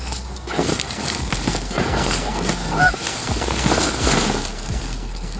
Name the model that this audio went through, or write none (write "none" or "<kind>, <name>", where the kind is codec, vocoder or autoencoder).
codec, SNAC